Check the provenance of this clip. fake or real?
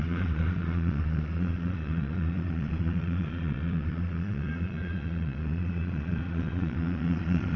fake